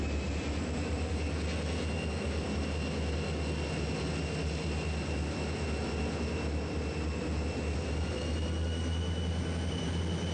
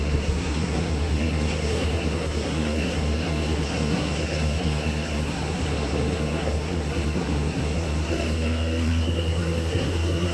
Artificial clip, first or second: second